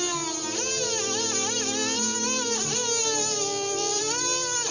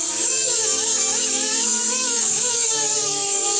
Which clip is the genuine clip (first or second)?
first